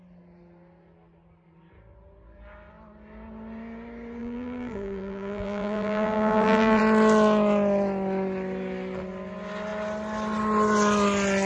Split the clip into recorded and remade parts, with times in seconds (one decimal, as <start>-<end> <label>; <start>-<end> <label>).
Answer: 0.0-4.2 recorded; 4.2-6.8 remade; 6.8-11.5 recorded